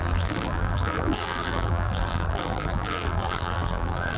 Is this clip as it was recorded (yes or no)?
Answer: no